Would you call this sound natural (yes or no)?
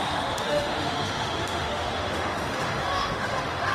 no